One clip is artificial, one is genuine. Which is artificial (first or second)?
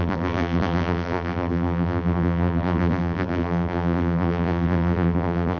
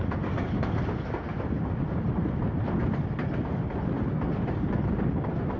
first